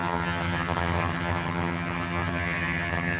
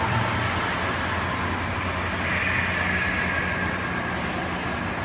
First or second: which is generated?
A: first